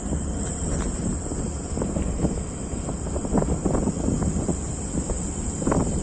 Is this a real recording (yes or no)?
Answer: yes